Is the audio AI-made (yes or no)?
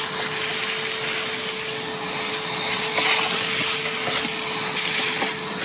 no